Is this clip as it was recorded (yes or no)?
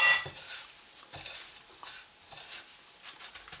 yes